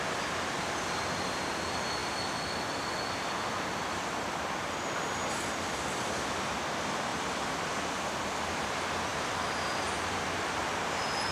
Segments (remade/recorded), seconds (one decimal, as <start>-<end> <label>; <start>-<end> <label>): 0.0-7.1 recorded; 7.1-7.7 remade; 7.7-9.1 recorded; 9.1-10.2 remade; 10.2-11.3 recorded